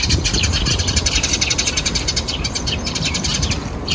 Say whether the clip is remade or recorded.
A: recorded